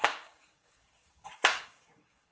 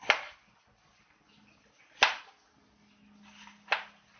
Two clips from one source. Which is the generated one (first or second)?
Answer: first